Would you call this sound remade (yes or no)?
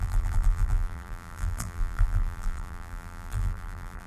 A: yes